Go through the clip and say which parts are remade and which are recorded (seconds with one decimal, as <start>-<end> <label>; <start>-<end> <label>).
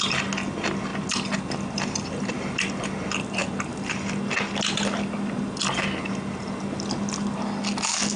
0.0-8.2 recorded